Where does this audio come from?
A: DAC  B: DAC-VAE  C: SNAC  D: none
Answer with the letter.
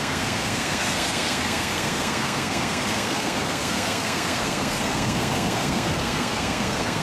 C